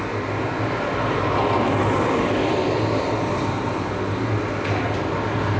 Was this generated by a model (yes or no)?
no